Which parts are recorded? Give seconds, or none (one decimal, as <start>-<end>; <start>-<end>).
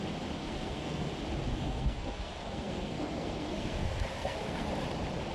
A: 0.0-0.4; 1.1-1.5; 4.7-5.3